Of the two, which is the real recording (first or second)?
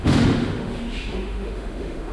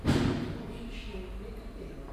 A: second